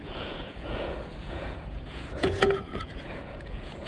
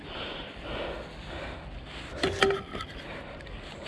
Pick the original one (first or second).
second